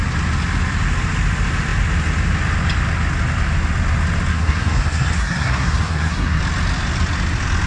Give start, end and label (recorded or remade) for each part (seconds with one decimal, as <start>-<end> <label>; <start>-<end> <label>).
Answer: 0.0-4.3 recorded; 4.3-6.4 remade; 6.4-7.7 recorded